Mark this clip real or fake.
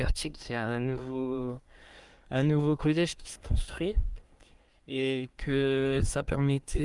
fake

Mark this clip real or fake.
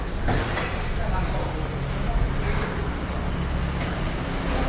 real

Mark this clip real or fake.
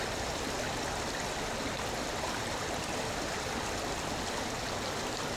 real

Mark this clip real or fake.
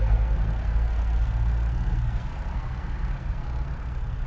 fake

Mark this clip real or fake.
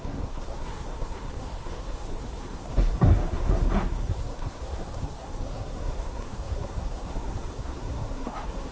fake